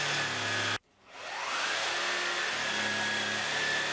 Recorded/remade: recorded